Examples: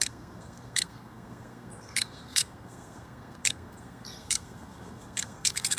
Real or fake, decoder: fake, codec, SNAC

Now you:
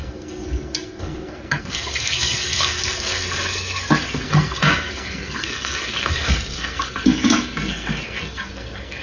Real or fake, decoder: fake, codec, SNAC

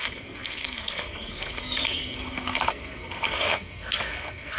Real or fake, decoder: fake, codec, SNAC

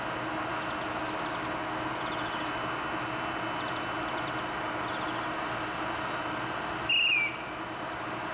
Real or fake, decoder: real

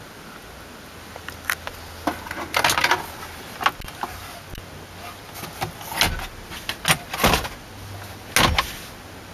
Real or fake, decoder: real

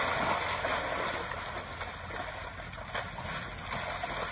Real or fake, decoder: real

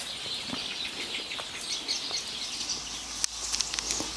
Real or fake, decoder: real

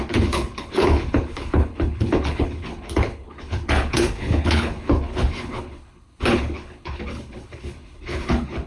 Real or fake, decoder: fake, codec, HILCodec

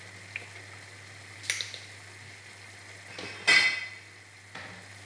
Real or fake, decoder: real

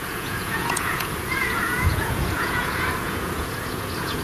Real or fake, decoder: fake, vocoder, Vocos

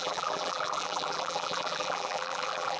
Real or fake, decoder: fake, vocoder, BigVGAN v2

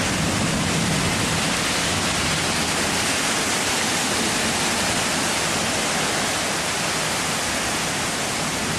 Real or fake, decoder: real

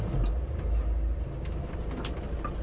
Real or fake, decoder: real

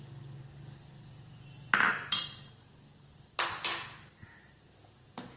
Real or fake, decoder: real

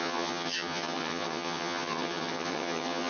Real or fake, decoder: fake, vocoder, HiFi-GAN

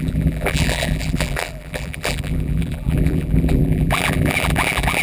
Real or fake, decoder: fake, vocoder, BigVGAN v2